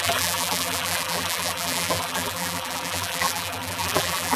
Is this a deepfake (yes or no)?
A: yes